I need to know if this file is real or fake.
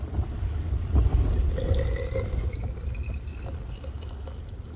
real